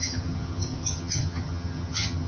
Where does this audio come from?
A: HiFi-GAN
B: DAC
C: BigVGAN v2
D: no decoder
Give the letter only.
A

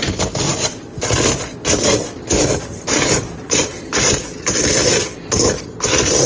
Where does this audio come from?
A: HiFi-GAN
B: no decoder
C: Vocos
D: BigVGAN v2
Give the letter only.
B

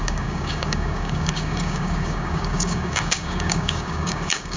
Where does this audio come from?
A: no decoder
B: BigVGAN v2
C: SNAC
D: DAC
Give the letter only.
D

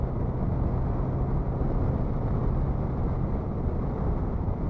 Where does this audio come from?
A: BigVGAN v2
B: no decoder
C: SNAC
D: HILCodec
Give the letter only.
B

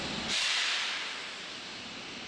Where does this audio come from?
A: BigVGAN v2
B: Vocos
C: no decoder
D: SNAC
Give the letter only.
A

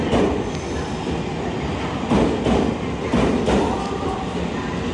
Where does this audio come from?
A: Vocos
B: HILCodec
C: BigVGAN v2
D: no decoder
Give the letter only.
D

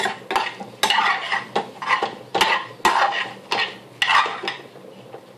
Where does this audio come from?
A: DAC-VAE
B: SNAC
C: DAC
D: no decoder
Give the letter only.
D